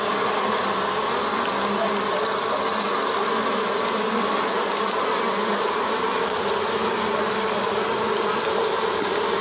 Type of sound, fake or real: real